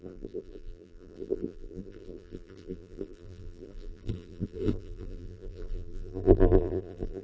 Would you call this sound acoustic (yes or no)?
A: no